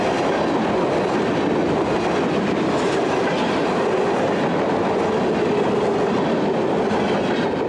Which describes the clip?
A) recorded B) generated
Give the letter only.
A